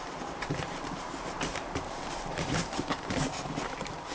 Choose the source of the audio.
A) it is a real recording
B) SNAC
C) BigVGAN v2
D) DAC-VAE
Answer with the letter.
C